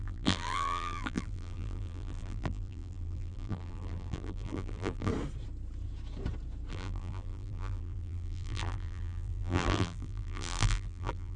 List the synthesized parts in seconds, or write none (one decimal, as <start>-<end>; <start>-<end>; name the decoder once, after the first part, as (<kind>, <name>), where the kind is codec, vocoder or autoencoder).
0.0-5.1 (vocoder, BigVGAN v2); 6.7-11.4

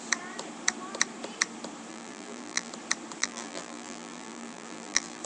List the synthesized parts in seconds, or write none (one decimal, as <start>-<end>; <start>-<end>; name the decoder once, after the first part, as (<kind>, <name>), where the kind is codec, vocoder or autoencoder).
1.9-2.7 (vocoder, BigVGAN v2); 3.2-5.2

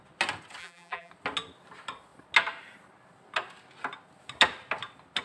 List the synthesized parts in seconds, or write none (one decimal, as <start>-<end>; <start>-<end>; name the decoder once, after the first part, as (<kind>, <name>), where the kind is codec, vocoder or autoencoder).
0.6-1.1 (vocoder, BigVGAN v2)

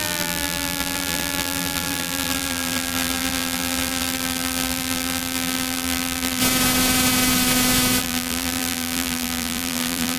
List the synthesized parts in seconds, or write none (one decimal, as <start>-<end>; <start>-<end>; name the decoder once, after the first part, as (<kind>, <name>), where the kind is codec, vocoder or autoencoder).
0.0-6.4 (vocoder, BigVGAN v2); 8.0-10.2

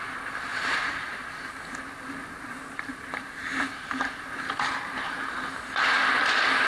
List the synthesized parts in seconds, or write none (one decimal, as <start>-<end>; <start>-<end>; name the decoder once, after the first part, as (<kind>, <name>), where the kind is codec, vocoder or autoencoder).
0.5-1.2 (vocoder, BigVGAN v2); 2.2-5.6

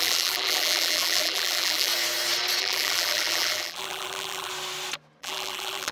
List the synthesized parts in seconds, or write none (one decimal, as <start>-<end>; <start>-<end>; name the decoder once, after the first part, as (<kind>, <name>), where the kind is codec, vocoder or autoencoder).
0.0-1.9 (vocoder, BigVGAN v2); 2.6-4.5; 5.2-5.9

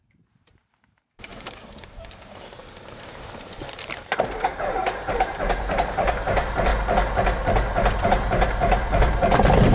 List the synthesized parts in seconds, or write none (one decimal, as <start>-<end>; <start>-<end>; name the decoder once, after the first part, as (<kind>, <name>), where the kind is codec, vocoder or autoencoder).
0.0-6.7 (vocoder, BigVGAN v2); 7.9-9.7